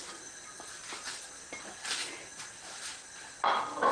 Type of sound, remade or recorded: recorded